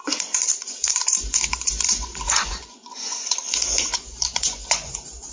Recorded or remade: remade